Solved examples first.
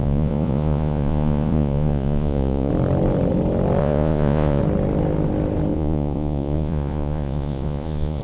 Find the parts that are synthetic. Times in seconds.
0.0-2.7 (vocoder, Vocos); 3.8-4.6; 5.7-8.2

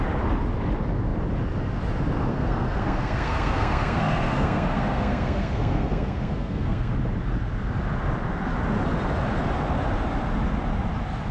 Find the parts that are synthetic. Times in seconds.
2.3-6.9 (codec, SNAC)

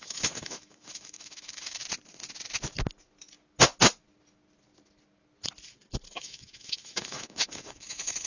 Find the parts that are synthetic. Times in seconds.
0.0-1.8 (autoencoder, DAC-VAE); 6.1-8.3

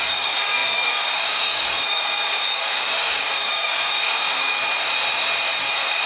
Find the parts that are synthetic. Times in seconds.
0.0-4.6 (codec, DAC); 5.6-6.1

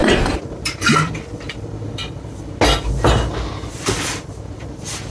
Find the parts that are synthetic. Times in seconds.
0.0-1.1 (vocoder, BigVGAN v2)